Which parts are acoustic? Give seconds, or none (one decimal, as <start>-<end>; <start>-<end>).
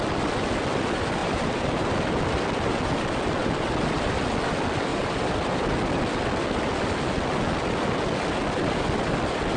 0.0-1.2; 2.2-3.4; 4.1-4.9; 5.5-9.6